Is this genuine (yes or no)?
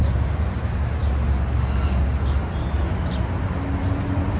yes